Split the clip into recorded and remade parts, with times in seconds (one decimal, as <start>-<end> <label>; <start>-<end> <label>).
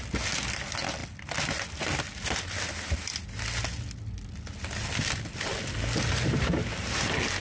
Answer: 0.0-7.4 recorded